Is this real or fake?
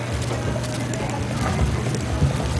real